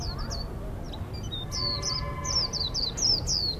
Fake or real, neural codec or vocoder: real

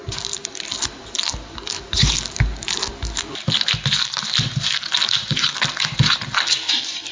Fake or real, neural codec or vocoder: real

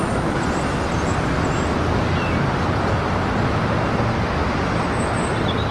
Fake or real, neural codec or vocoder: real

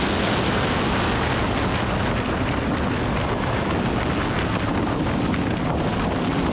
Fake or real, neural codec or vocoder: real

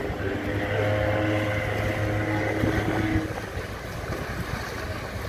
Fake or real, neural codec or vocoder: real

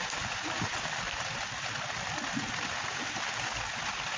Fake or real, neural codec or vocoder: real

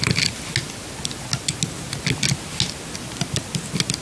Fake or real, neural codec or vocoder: real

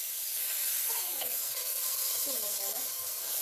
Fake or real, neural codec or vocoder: fake, codec, SNAC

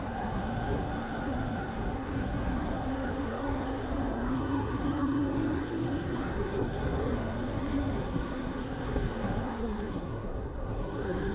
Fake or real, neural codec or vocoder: fake, codec, SNAC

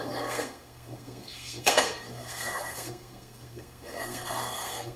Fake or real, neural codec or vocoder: fake, codec, SNAC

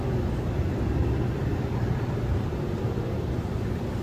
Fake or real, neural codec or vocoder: real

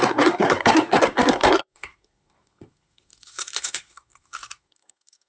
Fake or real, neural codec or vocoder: fake, codec, SNAC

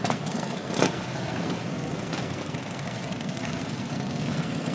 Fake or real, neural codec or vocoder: fake, codec, SNAC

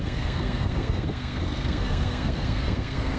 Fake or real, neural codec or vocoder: fake, codec, SNAC